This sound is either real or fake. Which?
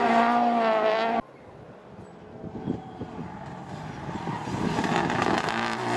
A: real